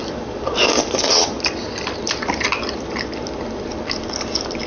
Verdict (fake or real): real